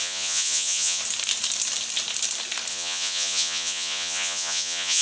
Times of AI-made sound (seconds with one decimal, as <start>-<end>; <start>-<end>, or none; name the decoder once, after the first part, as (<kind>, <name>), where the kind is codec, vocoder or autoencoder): 0.0-1.0 (vocoder, Vocos); 2.7-5.0